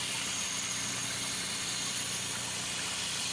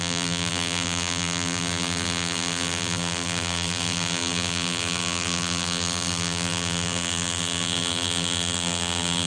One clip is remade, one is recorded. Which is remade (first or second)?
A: second